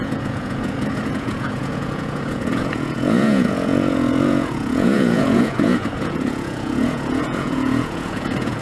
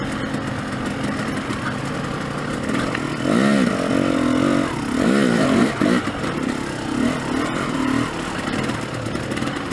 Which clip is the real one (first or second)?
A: second